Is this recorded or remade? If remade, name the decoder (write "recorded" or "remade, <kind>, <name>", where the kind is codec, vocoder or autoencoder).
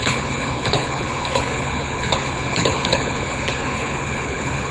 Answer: remade, codec, HILCodec